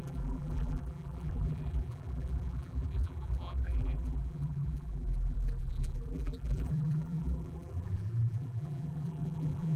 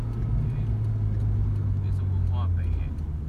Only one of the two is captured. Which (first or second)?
second